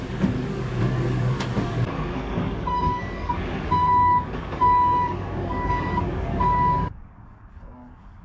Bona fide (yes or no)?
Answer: no